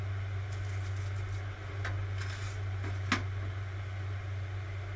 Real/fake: real